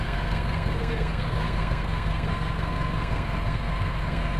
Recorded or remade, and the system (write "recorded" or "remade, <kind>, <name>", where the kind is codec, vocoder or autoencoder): remade, codec, SNAC